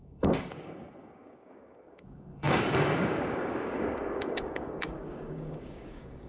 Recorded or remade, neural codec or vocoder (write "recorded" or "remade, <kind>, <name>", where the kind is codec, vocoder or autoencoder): remade, codec, DAC